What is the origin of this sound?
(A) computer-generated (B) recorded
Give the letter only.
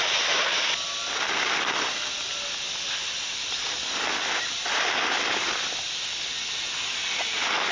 B